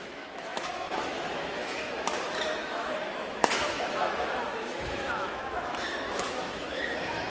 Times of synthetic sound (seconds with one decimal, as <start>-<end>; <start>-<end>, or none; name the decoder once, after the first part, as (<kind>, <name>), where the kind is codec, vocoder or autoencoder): 0.0-7.3 (autoencoder, DAC-VAE)